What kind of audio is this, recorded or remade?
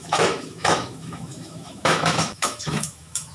remade